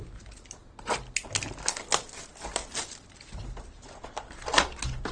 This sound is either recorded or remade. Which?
recorded